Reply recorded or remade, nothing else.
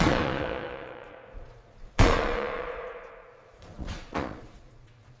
remade